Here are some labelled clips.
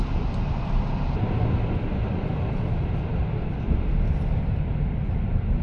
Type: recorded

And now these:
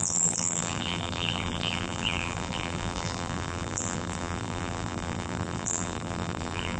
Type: remade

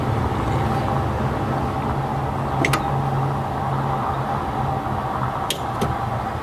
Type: recorded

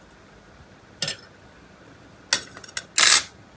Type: recorded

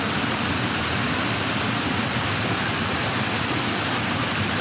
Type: recorded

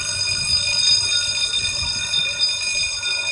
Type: recorded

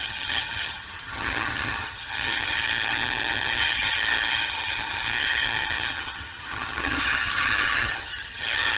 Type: remade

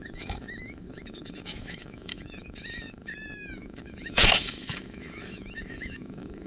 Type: remade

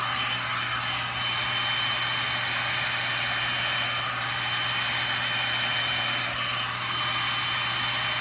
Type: recorded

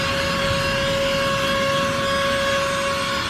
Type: recorded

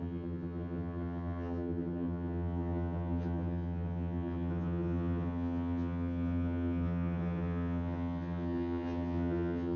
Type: remade